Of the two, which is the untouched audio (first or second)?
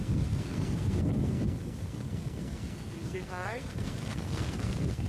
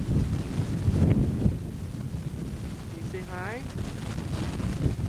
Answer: second